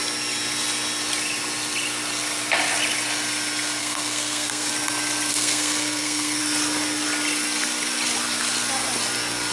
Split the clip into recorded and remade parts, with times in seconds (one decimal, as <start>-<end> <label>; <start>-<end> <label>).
0.0-3.8 recorded; 3.8-4.7 remade; 4.7-5.3 recorded; 5.3-6.4 remade; 6.4-9.5 recorded